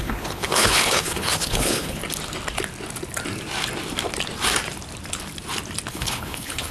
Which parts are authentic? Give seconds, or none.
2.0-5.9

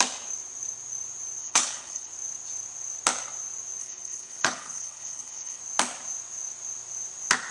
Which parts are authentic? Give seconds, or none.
0.0-1.4; 2.1-3.8; 5.6-7.5

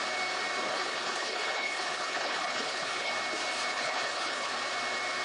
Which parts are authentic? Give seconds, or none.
0.0-0.7; 3.1-3.7; 4.5-5.2

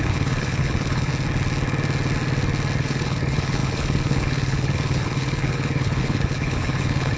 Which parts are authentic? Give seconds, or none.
1.1-2.8

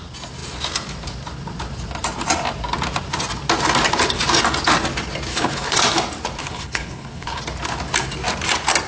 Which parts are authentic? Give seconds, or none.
0.0-5.3; 5.8-6.4; 7.4-8.9

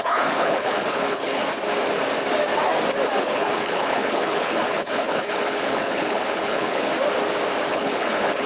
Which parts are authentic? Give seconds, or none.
1.4-3.2; 6.9-7.7

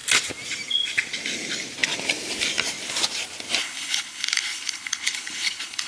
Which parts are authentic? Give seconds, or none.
0.0-3.6